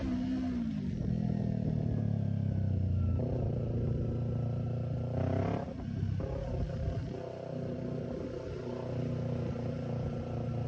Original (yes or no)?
yes